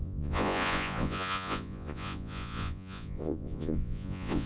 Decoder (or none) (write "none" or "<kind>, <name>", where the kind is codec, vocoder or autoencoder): vocoder, Vocos